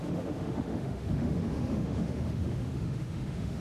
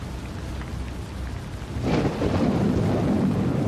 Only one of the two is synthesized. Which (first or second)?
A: first